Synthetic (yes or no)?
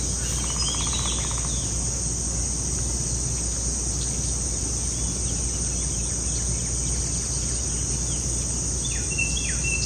no